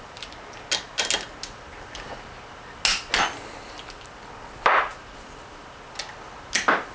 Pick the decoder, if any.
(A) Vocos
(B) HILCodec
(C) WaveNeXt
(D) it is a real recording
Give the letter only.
D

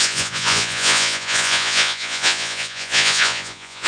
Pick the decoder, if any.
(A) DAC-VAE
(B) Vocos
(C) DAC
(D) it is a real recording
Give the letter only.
B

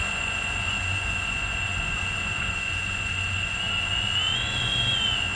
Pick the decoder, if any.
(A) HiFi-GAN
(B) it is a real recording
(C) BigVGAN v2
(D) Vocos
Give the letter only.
D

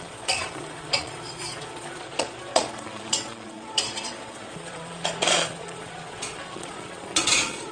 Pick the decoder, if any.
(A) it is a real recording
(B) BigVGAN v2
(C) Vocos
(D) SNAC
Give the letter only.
C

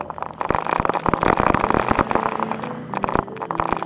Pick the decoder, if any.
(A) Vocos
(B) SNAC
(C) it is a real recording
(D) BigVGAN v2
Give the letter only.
C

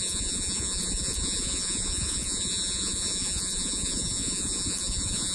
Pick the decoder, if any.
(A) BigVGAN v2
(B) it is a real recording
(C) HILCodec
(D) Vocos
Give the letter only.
D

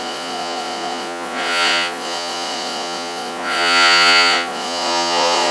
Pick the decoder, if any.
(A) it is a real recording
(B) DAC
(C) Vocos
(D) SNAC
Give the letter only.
C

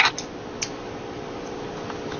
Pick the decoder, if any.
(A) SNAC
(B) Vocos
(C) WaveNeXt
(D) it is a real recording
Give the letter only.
D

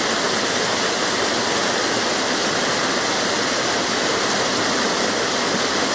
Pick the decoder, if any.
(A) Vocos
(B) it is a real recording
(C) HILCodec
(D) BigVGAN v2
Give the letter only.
B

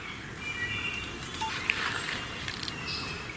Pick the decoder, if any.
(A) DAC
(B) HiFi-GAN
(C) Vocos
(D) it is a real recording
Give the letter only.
D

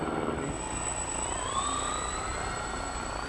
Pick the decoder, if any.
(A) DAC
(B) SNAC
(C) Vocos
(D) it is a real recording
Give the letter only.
D